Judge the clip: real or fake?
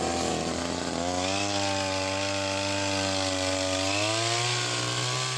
real